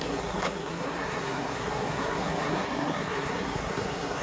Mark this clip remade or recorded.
remade